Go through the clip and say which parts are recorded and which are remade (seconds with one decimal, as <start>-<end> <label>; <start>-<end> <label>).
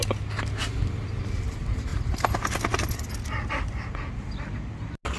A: 0.0-5.2 recorded